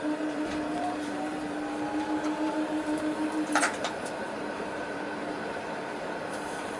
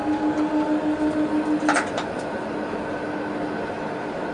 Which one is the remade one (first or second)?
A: first